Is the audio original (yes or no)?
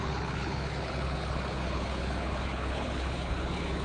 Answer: no